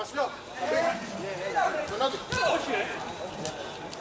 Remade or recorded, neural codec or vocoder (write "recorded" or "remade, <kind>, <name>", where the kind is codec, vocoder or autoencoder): recorded